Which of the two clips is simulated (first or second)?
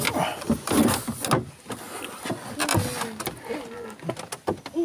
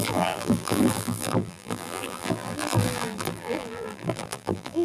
second